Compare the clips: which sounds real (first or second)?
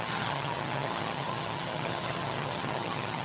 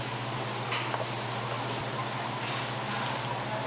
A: second